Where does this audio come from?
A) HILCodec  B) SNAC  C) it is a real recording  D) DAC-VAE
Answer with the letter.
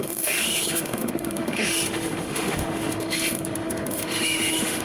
D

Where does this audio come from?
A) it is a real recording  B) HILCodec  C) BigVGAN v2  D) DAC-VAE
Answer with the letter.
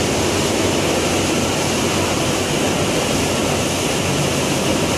A